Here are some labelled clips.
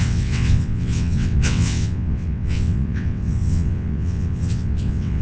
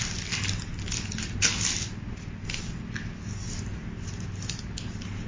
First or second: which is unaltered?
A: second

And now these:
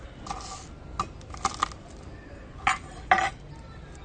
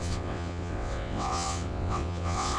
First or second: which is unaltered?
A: first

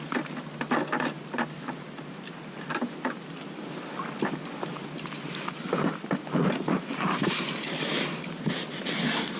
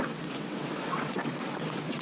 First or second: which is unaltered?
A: first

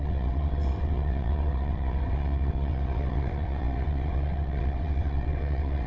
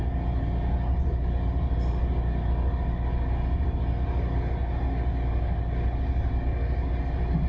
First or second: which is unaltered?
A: second